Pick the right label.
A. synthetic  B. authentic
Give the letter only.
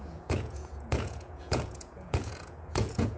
A